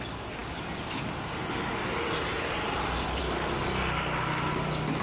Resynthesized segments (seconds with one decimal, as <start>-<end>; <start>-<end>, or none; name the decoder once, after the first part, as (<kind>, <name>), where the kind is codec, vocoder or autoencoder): none